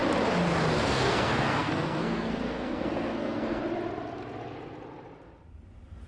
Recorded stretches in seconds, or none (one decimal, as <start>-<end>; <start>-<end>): 0.0-0.8; 3.6-6.1